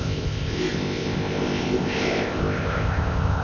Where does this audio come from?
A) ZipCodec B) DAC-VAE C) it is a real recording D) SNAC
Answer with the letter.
A